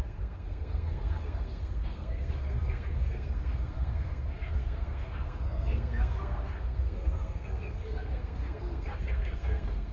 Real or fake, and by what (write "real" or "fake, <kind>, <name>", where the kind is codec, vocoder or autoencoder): fake, codec, SNAC